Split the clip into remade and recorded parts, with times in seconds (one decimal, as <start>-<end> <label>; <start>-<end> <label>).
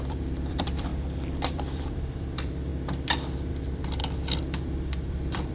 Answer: 0.0-0.9 remade; 0.9-1.5 recorded; 1.5-2.7 remade; 2.7-3.5 recorded; 3.5-4.0 remade; 4.0-4.6 recorded; 4.6-5.5 remade